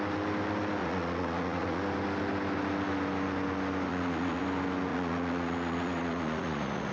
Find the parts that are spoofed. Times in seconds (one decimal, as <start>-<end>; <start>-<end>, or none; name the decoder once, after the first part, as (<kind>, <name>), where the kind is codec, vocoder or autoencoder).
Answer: 0.8-1.8 (vocoder, Vocos); 3.9-4.4; 4.9-6.9